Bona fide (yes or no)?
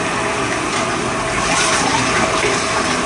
yes